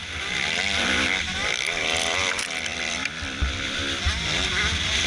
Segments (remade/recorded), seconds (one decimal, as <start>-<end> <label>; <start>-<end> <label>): 0.0-1.4 recorded; 1.4-3.8 remade; 3.8-5.1 recorded